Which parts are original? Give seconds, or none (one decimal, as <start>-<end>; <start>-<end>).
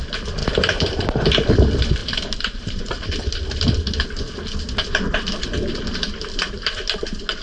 0.0-0.4; 1.0-2.0; 2.8-7.4